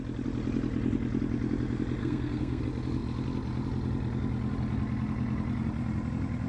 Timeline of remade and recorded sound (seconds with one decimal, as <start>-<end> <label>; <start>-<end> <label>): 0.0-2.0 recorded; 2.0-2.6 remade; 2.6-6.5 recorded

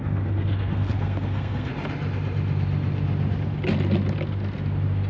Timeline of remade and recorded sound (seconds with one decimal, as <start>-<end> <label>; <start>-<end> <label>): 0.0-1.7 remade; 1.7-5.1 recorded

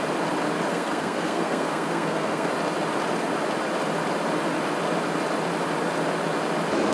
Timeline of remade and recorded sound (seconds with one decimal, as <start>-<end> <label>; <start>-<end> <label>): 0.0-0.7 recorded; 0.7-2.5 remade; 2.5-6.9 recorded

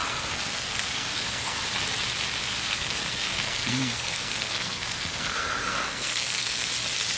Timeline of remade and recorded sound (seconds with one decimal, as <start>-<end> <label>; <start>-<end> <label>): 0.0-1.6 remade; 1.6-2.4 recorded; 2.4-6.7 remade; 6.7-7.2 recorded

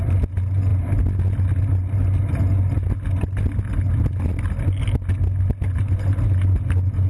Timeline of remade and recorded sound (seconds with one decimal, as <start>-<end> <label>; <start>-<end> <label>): 0.0-7.1 recorded

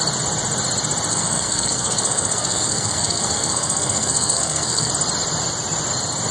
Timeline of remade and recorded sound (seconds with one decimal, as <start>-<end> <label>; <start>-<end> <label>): 0.0-1.1 recorded; 1.1-4.9 remade; 4.9-6.3 recorded

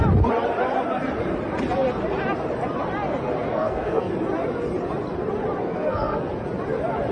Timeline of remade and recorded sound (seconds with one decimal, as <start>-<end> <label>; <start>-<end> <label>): 0.0-3.5 recorded; 3.5-4.1 remade; 4.1-5.6 recorded; 5.6-6.3 remade; 6.3-7.1 recorded

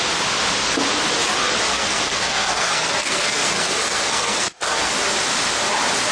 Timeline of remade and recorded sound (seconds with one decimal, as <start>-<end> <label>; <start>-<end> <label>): 0.0-1.7 recorded; 1.7-4.9 remade; 4.9-6.1 recorded